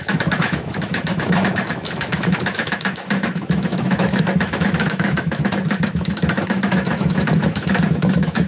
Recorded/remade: remade